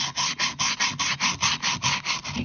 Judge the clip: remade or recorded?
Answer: recorded